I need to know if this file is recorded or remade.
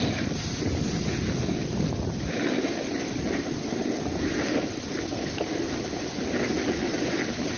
recorded